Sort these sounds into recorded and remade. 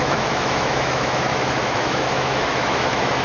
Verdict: remade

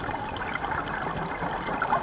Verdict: recorded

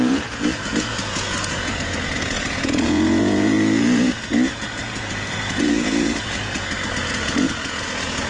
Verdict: remade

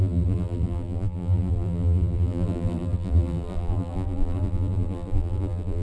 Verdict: remade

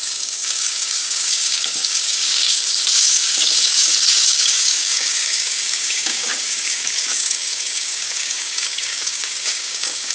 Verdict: remade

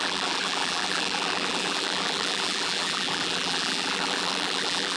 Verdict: remade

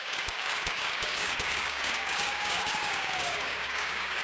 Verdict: remade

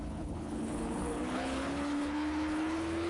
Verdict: remade